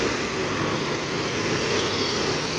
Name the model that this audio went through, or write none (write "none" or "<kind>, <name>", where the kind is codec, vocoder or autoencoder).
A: none